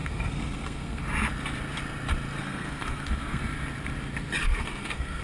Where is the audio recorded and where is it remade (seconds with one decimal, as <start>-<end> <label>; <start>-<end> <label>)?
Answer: 0.0-1.0 remade; 1.0-2.4 recorded; 2.4-3.4 remade; 3.4-4.4 recorded; 4.4-5.2 remade